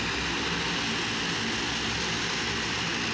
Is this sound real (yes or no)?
yes